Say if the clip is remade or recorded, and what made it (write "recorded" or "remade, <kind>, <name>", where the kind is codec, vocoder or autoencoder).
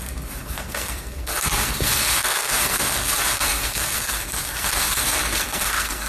remade, codec, SNAC